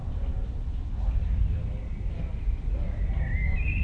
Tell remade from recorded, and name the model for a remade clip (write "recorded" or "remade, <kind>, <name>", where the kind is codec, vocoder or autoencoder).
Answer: recorded